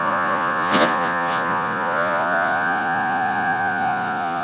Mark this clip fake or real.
fake